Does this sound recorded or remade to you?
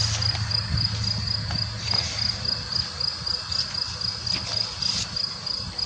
recorded